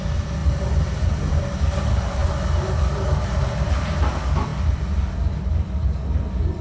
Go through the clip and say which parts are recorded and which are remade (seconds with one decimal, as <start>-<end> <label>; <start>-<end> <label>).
0.0-0.4 recorded; 0.4-1.4 remade; 1.4-6.6 recorded